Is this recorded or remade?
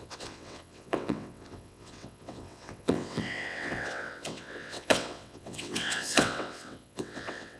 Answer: remade